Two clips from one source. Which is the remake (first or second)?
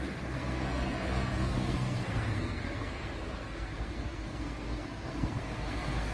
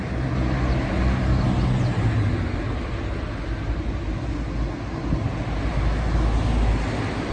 first